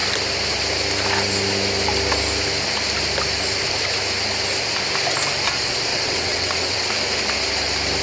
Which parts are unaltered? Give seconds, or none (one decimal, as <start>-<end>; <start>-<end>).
0.0-5.9; 6.9-8.0